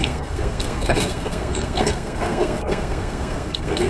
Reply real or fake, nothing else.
fake